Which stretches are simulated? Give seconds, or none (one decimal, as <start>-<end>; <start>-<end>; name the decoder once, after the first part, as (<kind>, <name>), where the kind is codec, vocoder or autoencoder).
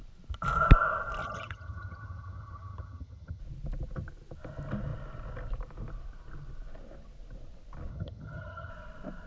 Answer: 1.2-3.4 (vocoder, HiFi-GAN); 7.9-8.7